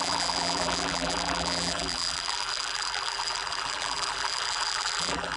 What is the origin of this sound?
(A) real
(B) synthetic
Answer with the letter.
B